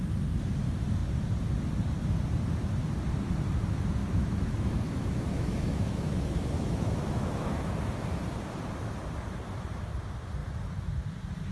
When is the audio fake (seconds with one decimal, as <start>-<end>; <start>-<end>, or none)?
4.0-7.7